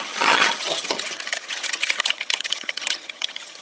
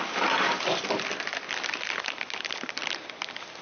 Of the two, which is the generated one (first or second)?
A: first